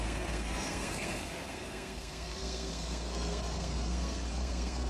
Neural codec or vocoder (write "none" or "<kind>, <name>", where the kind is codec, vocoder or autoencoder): codec, SNAC